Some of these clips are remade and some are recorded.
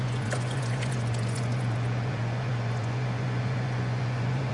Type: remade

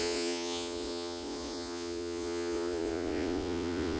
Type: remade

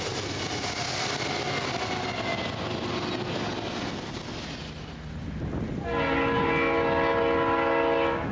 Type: recorded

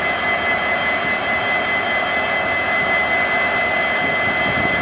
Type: recorded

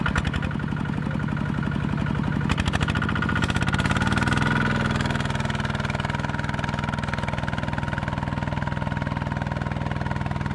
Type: recorded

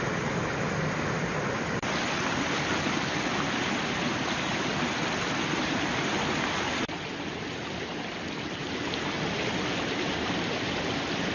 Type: recorded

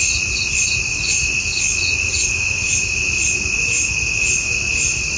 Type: recorded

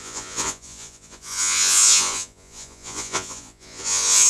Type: remade